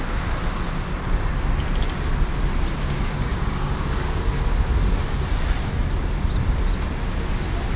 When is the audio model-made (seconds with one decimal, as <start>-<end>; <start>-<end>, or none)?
3.3-4.3